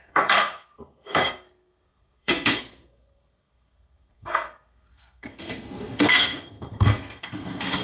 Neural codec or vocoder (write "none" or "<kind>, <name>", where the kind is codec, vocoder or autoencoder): codec, SNAC